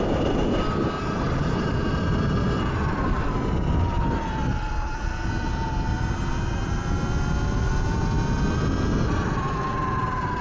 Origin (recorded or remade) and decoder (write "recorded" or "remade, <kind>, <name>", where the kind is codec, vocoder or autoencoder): recorded